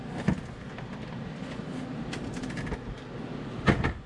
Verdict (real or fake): real